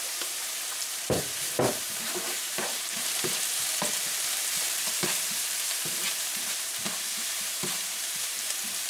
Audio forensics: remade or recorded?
remade